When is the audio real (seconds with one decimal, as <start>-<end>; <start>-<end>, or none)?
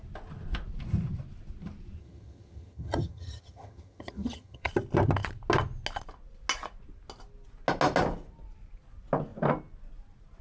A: 0.0-2.0; 4.7-10.4